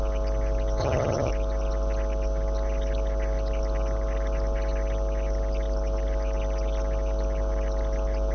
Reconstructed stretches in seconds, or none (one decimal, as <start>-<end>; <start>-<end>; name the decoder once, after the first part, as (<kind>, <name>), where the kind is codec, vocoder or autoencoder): 0.8-1.3 (vocoder, HiFi-GAN)